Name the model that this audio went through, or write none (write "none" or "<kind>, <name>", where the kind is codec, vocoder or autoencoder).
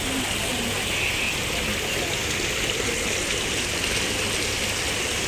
none